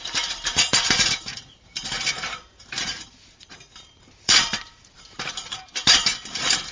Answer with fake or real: fake